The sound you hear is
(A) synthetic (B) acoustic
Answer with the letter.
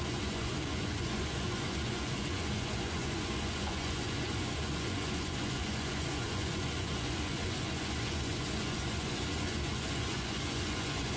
A